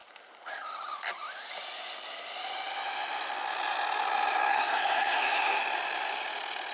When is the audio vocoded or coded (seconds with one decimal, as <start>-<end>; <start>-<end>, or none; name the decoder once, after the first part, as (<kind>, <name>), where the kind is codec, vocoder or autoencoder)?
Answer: 4.5-5.6 (codec, SNAC)